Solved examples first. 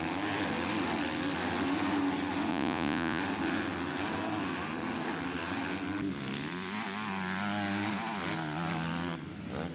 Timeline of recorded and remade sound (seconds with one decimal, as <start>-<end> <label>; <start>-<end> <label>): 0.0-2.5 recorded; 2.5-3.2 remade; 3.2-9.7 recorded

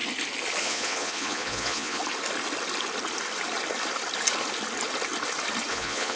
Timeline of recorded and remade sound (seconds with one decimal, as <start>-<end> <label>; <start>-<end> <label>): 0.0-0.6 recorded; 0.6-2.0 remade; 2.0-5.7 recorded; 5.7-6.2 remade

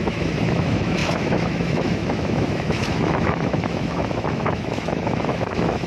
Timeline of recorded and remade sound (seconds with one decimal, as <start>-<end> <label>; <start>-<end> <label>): 0.0-5.9 remade

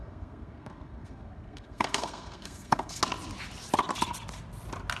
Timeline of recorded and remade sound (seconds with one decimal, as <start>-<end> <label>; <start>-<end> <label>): 0.0-3.0 remade; 3.0-5.0 recorded

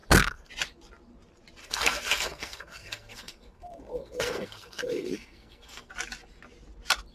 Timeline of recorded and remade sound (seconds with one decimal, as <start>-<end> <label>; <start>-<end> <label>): 0.0-0.5 remade; 0.5-1.6 recorded; 1.6-5.9 remade; 5.9-7.1 recorded

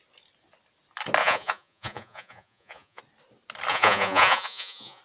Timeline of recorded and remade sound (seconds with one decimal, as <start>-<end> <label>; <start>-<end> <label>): 0.0-1.2 recorded; 1.2-3.0 remade; 3.0-3.7 recorded; 3.7-5.0 remade

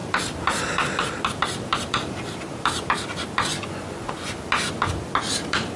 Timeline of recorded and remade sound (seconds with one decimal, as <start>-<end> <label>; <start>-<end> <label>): 0.0-3.5 recorded; 3.5-4.3 remade; 4.3-5.8 recorded

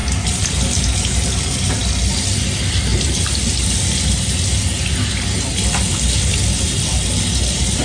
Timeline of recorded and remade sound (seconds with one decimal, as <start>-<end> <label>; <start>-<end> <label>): 0.0-7.8 recorded